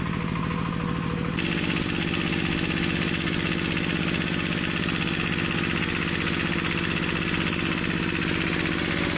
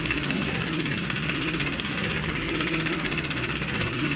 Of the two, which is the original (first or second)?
first